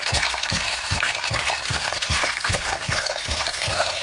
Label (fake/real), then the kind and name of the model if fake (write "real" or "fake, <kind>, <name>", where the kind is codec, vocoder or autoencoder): fake, codec, SNAC